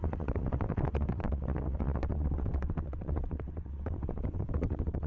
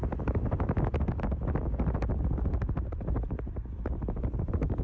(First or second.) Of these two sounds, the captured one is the second